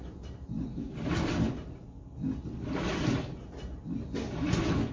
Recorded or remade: recorded